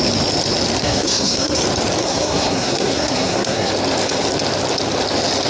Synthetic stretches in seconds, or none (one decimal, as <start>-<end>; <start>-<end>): 0.8-1.6; 2.0-3.7